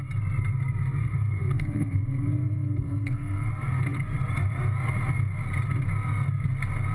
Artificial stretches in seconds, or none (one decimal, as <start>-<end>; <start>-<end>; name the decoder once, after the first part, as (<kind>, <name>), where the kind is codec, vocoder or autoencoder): 1.0-3.5 (codec, SNAC)